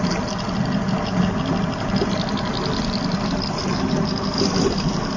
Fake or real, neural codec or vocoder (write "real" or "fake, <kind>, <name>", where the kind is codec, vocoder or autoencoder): real